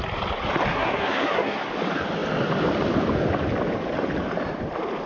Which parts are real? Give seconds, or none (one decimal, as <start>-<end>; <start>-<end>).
0.0-0.7; 1.7-5.1